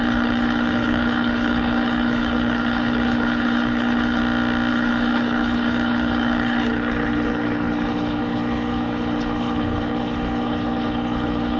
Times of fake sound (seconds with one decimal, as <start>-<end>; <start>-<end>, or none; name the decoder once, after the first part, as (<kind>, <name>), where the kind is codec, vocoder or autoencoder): 0.0-4.2 (codec, HILCodec); 4.7-11.6